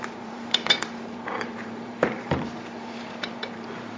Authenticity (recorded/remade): remade